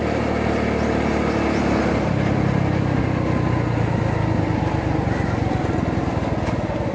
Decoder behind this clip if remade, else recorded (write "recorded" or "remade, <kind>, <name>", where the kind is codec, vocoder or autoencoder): recorded